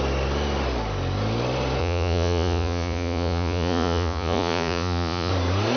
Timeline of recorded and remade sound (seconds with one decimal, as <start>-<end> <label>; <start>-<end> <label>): 0.0-1.8 recorded; 1.8-5.3 remade; 5.3-5.8 recorded

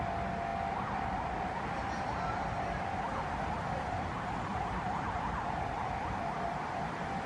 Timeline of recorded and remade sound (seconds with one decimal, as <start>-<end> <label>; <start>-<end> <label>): 0.0-0.5 recorded; 0.5-2.8 remade; 2.8-4.5 recorded; 4.5-7.3 remade

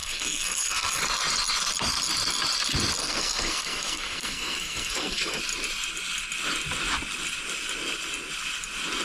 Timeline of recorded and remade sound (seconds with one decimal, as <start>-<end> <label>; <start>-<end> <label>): 0.0-1.0 remade; 1.0-3.0 recorded; 3.0-5.4 remade; 5.4-9.0 recorded

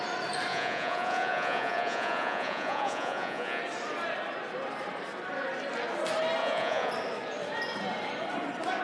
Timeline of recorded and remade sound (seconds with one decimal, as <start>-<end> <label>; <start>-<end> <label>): 0.0-0.5 recorded; 0.5-3.6 remade; 3.6-6.4 recorded; 6.4-6.9 remade; 6.9-8.8 recorded

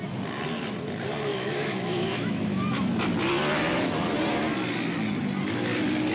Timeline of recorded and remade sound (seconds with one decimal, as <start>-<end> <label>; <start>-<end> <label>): 0.0-1.3 recorded; 1.3-2.6 remade; 2.6-6.1 recorded

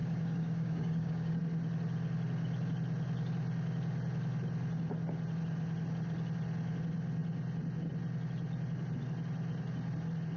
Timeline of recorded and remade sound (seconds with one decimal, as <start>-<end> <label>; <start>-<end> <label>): 0.0-1.4 remade; 1.4-10.4 recorded

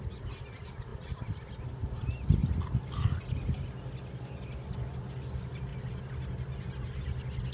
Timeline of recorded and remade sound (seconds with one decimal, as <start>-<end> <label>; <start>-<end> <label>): 0.0-7.5 recorded

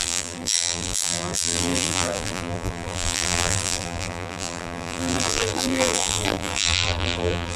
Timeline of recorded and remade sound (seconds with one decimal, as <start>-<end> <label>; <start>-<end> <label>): 0.0-7.6 remade